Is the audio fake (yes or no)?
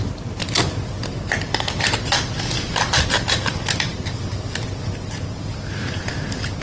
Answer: no